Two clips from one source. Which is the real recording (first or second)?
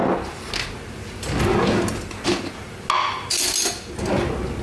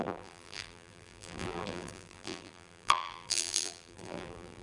first